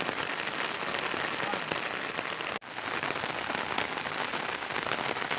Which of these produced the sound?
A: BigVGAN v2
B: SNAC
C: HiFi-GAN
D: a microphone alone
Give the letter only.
D